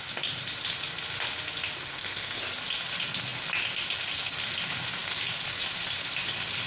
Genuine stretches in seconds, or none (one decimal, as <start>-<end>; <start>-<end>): 0.0-1.8; 2.4-6.7